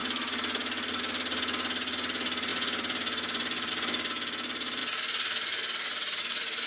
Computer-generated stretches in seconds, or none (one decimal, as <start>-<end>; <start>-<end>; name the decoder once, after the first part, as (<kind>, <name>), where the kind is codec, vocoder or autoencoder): 2.5-3.7 (vocoder, BigVGAN v2)